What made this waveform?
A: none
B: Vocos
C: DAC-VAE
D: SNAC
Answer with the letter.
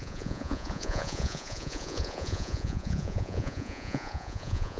B